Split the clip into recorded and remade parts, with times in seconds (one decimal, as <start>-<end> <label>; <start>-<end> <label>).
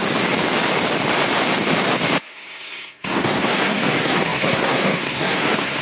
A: 0.0-2.3 recorded; 2.3-5.8 remade